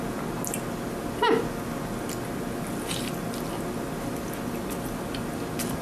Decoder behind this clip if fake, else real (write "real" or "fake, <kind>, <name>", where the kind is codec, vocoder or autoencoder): real